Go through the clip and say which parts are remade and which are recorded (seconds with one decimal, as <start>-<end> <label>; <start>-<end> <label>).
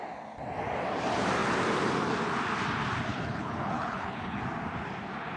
0.0-3.1 recorded; 3.1-4.4 remade; 4.4-5.4 recorded